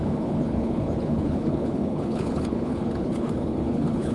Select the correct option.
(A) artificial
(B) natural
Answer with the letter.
A